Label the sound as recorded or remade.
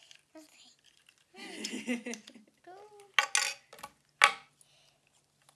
recorded